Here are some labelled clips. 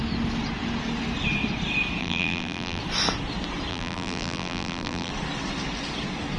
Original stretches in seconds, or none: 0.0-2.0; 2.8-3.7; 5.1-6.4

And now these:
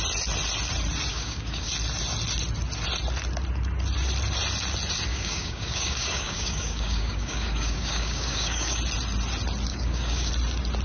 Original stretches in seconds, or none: 0.0-1.1; 1.7-5.1; 8.8-9.7; 10.3-10.8

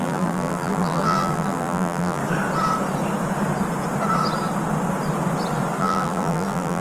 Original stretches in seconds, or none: 2.2-5.8

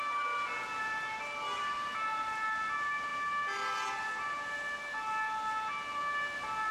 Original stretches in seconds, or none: 0.0-6.7

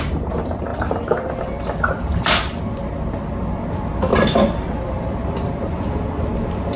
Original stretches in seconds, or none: 0.0-0.7; 2.6-4.1

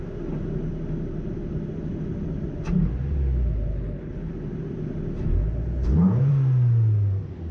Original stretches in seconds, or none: 0.0-3.7; 4.3-5.8; 6.3-7.5